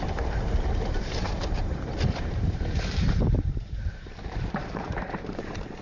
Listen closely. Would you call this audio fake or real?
fake